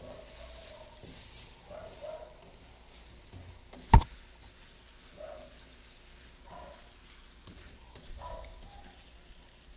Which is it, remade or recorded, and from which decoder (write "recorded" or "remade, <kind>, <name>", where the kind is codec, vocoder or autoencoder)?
recorded